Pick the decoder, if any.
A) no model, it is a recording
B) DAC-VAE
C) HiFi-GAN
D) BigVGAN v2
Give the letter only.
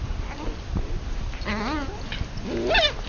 A